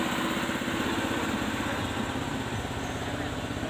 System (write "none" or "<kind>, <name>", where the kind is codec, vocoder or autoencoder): none